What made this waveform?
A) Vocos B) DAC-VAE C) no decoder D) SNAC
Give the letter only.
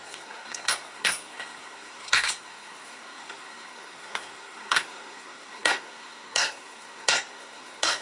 D